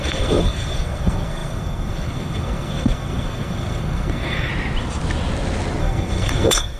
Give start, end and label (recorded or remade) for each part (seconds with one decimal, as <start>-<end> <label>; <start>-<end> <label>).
0.0-4.5 remade; 4.5-5.8 recorded; 5.8-6.8 remade